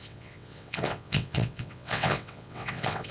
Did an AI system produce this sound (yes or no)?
yes